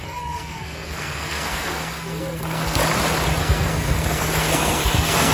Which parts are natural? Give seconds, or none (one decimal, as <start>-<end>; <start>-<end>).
2.8-3.4